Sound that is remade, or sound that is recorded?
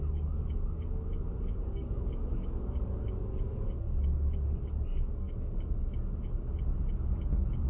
recorded